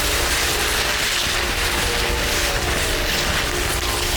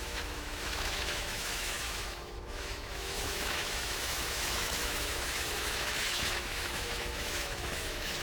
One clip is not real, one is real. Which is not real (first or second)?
second